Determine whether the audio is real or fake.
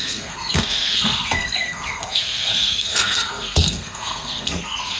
fake